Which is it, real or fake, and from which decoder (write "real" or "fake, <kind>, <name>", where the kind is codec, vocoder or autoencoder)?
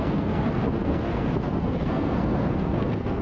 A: fake, codec, SNAC